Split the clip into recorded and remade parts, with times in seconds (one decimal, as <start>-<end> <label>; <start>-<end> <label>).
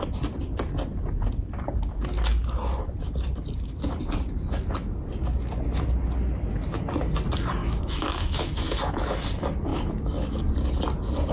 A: 0.0-7.6 recorded; 7.6-9.1 remade; 9.1-9.7 recorded; 9.7-10.4 remade; 10.4-11.3 recorded